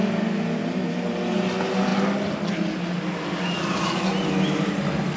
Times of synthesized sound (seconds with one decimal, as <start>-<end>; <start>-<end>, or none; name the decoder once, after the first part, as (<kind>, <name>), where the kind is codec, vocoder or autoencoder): none